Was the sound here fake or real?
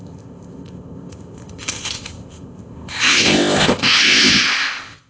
fake